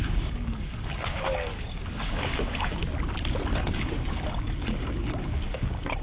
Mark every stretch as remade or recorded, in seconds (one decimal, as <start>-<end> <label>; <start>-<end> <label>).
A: 0.0-2.8 remade; 2.8-3.6 recorded; 3.6-6.0 remade